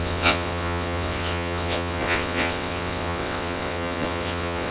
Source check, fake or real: fake